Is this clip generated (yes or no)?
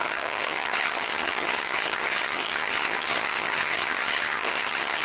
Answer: yes